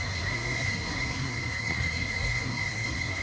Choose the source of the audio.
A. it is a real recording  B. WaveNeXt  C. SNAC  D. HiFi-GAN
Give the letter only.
C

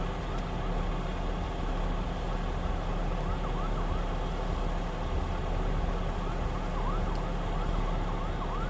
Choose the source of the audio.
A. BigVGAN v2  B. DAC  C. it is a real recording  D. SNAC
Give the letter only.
C